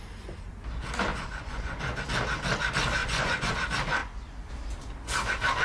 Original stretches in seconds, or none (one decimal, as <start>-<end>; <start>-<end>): 0.0-1.1; 2.0-3.0; 3.5-5.6